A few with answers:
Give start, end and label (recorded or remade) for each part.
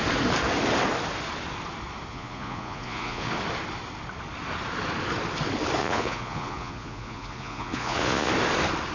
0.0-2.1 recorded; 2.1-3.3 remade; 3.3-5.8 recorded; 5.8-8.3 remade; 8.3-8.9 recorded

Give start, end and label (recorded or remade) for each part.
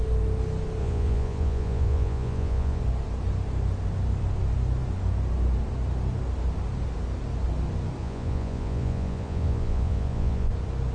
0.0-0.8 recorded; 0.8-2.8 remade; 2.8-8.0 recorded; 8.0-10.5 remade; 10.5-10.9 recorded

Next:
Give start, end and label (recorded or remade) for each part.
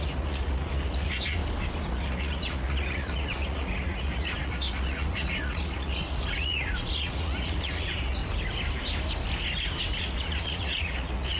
0.0-1.4 remade; 1.4-1.9 recorded; 1.9-8.2 remade; 8.2-10.0 recorded; 10.0-11.4 remade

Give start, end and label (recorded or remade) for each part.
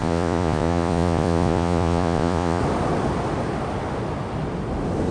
0.0-2.6 remade; 2.6-5.1 recorded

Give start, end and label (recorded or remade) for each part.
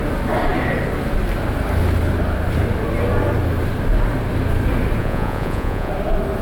0.0-5.0 recorded; 5.0-5.9 remade; 5.9-6.4 recorded